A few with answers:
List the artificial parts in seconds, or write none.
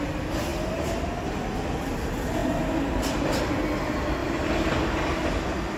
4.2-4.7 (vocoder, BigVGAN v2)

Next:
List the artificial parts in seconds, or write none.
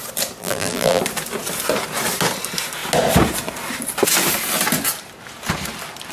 0.4-1.0 (vocoder, BigVGAN v2)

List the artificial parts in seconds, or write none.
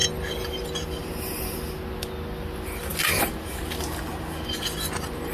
none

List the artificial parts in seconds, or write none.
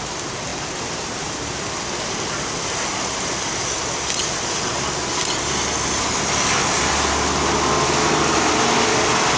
0.5-1.6 (vocoder, BigVGAN v2)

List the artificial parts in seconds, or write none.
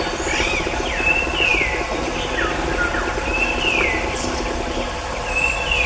none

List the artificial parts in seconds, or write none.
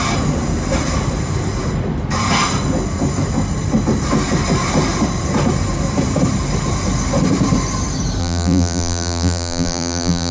8.2-10.3 (vocoder, BigVGAN v2)